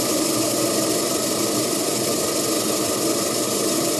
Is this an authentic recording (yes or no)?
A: no